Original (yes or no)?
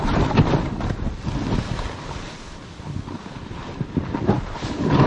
yes